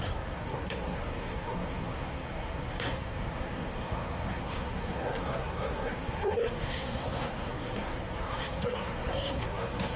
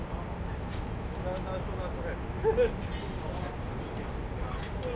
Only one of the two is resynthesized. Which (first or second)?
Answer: first